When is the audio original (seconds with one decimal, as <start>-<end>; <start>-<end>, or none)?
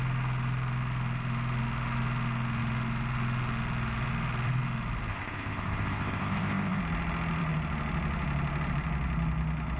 0.0-5.1; 6.8-9.8